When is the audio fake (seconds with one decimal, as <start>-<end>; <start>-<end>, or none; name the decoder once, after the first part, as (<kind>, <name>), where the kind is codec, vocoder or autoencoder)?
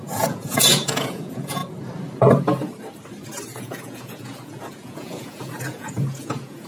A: 0.0-1.6 (vocoder, Vocos); 3.6-6.7